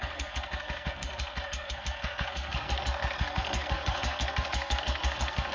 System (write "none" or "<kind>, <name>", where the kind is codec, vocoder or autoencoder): codec, SNAC